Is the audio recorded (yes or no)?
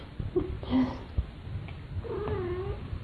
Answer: yes